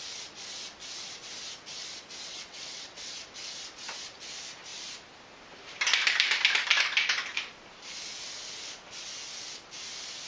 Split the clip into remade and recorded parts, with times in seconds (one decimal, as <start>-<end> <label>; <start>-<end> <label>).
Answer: 0.0-2.3 recorded; 2.3-3.1 remade; 3.1-10.3 recorded